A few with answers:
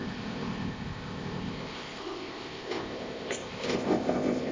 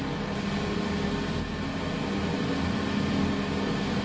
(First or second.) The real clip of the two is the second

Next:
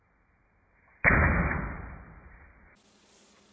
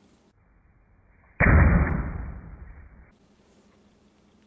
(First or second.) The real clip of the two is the first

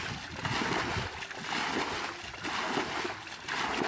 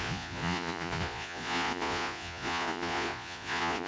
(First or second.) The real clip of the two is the first